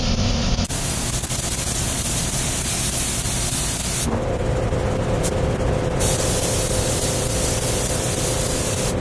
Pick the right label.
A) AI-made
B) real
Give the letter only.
B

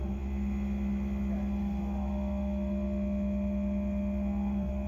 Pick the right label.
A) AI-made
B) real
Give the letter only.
B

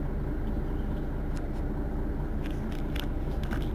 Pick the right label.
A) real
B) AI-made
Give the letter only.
A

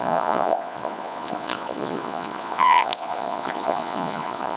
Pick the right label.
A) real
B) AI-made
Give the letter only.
B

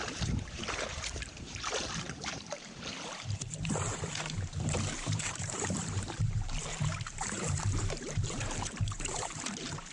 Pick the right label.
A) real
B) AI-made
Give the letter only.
B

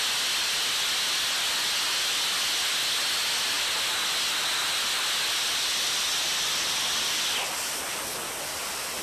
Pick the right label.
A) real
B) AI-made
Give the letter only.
A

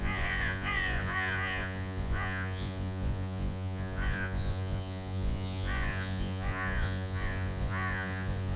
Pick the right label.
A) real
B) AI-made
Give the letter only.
B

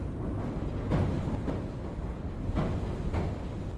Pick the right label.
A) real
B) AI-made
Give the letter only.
A